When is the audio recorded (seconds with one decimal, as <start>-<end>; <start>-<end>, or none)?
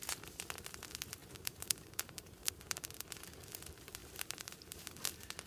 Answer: 0.0-1.2; 2.5-4.0; 5.0-5.5